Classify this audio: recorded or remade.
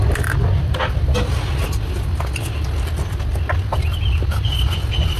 recorded